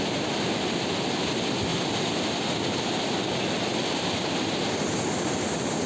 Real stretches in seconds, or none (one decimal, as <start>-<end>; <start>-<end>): 0.0-1.7; 3.2-3.7; 4.5-5.9